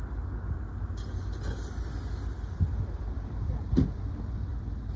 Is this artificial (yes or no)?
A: no